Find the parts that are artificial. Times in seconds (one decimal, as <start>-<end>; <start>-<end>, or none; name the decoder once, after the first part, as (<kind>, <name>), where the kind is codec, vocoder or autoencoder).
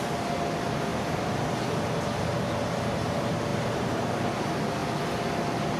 none